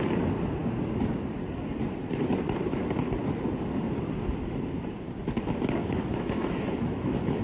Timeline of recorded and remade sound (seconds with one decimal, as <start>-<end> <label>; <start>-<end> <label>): 0.0-5.8 recorded; 5.8-7.4 remade